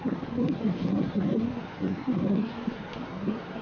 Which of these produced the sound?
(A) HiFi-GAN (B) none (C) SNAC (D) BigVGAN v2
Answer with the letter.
C